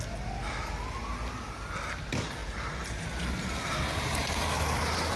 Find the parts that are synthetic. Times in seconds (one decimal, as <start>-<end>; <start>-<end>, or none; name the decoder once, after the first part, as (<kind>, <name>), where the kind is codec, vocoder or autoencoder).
none